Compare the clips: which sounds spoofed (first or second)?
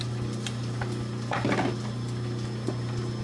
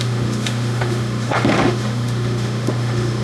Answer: second